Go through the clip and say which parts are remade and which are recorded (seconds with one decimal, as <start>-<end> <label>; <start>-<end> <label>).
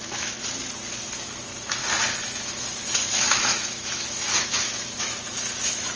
0.0-0.4 remade; 0.4-1.2 recorded; 1.2-1.8 remade; 1.8-2.4 recorded; 2.4-6.0 remade